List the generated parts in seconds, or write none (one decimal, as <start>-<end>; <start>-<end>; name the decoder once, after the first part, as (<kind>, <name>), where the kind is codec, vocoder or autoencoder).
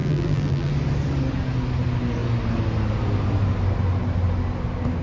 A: 0.0-0.7 (vocoder, BigVGAN v2)